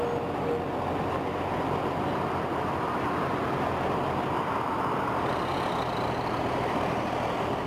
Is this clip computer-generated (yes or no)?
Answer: no